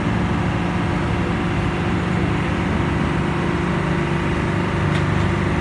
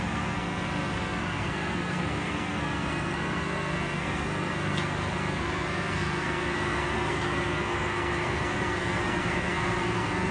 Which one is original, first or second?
first